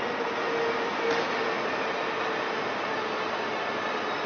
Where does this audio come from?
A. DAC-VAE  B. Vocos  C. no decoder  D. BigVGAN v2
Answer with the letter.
C